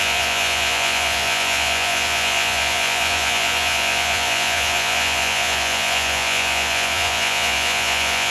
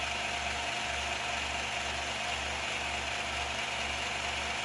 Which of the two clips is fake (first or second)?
first